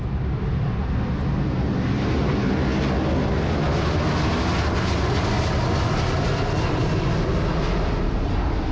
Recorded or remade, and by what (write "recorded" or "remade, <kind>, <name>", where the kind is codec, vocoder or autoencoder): recorded